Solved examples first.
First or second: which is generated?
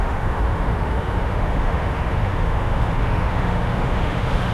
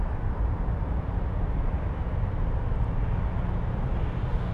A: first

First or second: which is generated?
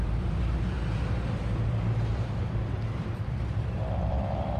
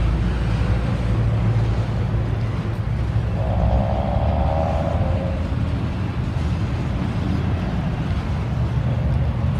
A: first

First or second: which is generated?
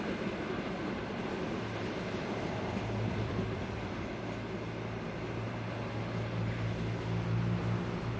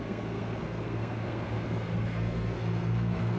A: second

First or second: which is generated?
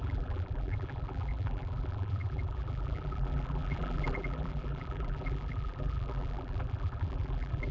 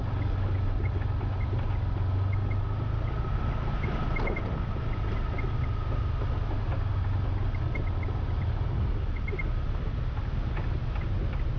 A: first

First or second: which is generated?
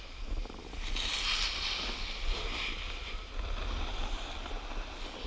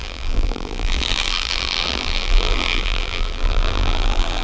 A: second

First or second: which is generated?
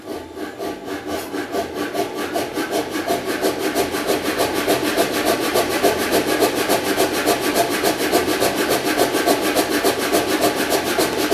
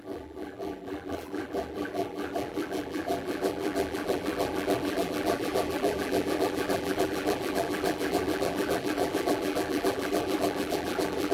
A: second